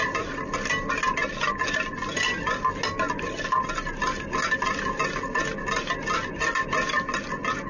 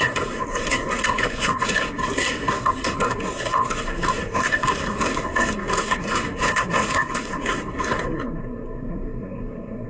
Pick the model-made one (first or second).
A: second